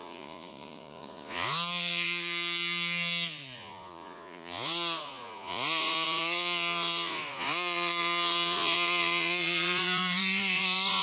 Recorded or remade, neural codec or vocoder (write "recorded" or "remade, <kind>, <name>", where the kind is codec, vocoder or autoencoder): remade, vocoder, Vocos